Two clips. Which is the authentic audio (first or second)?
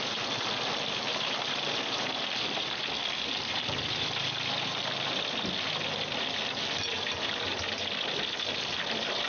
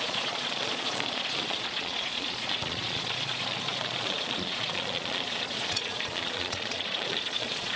first